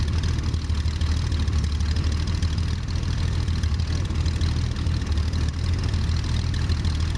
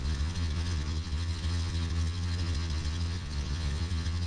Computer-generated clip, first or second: second